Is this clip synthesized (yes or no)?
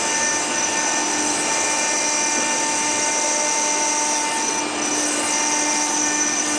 no